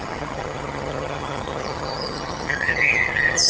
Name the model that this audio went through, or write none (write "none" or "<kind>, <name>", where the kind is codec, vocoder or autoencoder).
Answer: vocoder, HiFi-GAN